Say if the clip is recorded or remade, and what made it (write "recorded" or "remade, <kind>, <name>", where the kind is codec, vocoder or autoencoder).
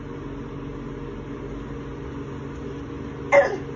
recorded